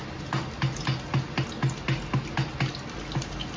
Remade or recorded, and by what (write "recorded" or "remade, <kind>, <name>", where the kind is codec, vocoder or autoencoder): recorded